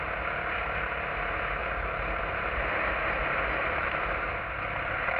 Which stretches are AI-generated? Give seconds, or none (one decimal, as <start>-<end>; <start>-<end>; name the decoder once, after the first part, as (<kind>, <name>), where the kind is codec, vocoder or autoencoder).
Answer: 1.6-2.2 (vocoder, BigVGAN v2)